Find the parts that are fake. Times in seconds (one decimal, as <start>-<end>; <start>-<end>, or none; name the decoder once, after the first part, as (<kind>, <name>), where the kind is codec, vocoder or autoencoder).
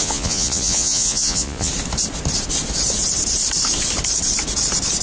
0.0-1.7 (vocoder, Vocos)